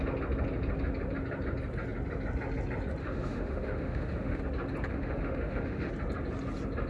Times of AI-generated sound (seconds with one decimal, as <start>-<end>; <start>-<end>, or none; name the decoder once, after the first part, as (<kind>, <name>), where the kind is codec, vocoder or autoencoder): 3.0-4.4 (autoencoder, DAC-VAE); 4.9-5.9